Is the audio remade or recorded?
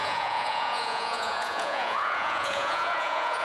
remade